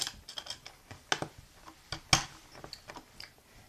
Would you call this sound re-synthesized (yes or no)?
no